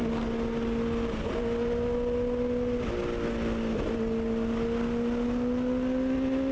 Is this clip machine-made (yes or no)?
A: no